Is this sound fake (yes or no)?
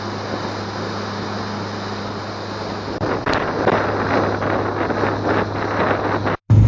no